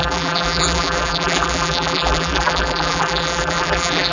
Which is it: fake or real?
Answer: fake